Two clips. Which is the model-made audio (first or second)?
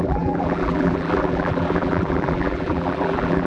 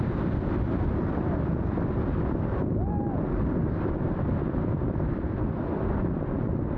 first